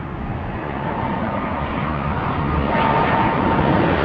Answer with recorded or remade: remade